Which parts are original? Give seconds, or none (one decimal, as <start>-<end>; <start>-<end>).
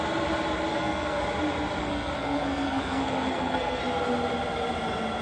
0.0-0.7; 1.2-1.8; 3.8-5.2